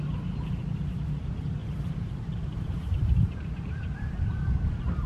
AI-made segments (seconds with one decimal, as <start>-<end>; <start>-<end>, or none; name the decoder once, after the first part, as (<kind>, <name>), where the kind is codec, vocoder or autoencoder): 1.6-5.1 (vocoder, BigVGAN v2)